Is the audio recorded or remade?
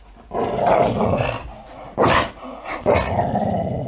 recorded